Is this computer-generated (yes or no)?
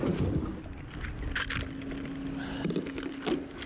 no